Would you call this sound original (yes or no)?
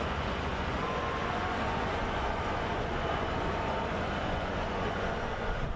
no